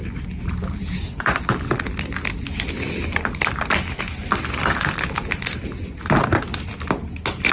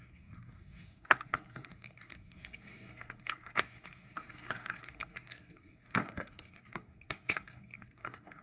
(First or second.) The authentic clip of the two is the first